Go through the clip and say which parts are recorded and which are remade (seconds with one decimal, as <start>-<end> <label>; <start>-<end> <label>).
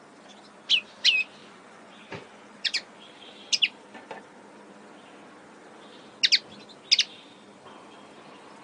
0.0-1.4 recorded; 1.4-3.1 remade; 3.1-8.6 recorded